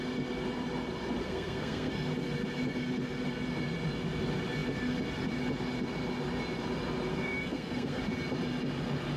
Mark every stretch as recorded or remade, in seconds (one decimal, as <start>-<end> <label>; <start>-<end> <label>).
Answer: 0.0-1.2 recorded; 1.2-1.9 remade; 1.9-7.1 recorded; 7.1-8.0 remade; 8.0-9.2 recorded